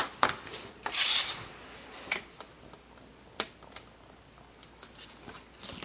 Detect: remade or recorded recorded